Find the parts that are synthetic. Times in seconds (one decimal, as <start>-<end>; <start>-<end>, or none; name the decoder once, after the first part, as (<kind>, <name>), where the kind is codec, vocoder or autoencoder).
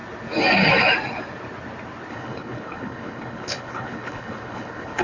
2.1-5.0 (codec, HILCodec)